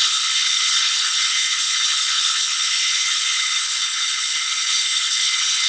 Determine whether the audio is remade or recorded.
remade